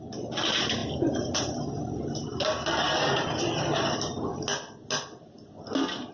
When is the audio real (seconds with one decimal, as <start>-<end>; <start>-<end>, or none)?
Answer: 0.0-6.1